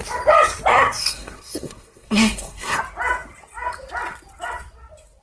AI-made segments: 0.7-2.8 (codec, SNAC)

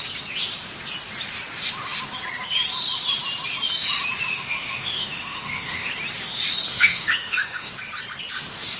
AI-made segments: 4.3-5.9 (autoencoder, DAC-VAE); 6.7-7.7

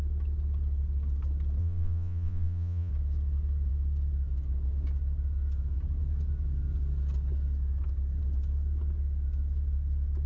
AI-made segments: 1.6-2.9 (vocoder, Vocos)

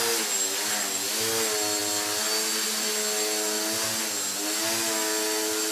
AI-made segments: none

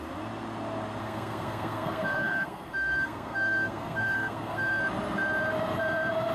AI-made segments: 1.0-4.8 (codec, SNAC)

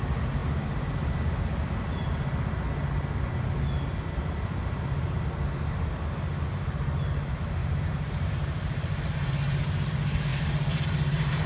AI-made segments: 7.6-9.3 (vocoder, BigVGAN v2); 10.3-11.5